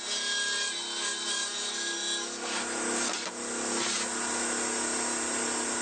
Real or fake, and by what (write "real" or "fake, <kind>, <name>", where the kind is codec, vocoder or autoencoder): real